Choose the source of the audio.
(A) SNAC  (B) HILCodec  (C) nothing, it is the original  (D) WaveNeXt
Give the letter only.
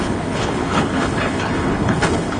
B